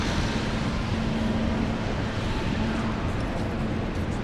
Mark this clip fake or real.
real